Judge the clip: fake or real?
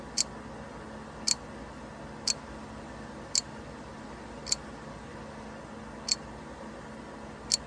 real